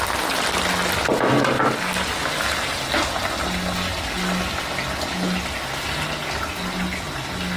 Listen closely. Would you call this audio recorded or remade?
recorded